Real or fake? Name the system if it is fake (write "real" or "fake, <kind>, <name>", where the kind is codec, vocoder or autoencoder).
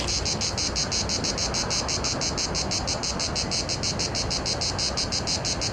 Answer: real